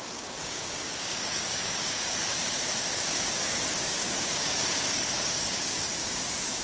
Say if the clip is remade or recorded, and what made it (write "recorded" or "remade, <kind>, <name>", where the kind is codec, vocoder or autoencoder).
remade, codec, DAC